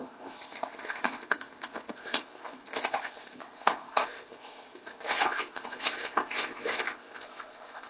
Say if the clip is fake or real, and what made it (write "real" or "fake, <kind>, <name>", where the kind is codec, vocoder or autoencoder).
fake, codec, ZipCodec